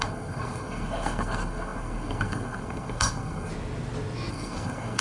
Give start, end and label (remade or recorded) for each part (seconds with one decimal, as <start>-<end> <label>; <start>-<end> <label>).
0.0-3.5 remade; 3.5-4.3 recorded; 4.3-5.0 remade